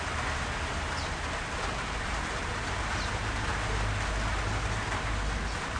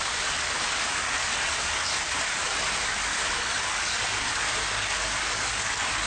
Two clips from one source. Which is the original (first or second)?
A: first